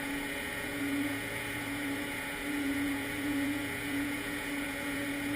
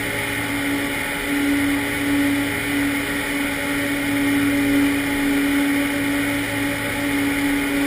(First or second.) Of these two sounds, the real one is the second